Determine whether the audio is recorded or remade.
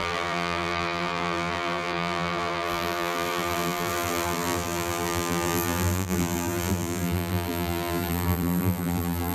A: remade